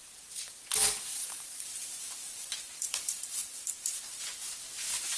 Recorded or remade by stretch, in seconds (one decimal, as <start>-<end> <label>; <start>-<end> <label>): 0.0-1.1 recorded; 1.1-4.2 remade; 4.2-5.2 recorded